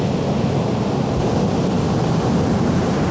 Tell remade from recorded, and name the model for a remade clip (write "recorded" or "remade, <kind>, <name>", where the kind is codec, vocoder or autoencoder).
recorded